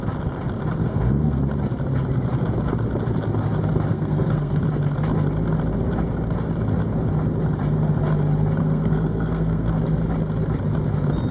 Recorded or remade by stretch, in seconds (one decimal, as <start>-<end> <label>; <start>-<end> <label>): 0.0-0.8 recorded; 0.8-1.4 remade; 1.4-3.9 recorded; 3.9-4.6 remade; 4.6-8.6 recorded; 8.6-9.8 remade; 9.8-11.3 recorded